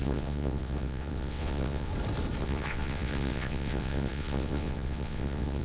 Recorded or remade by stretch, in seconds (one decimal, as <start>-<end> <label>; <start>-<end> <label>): 0.0-1.9 remade; 1.9-2.4 recorded; 2.4-5.6 remade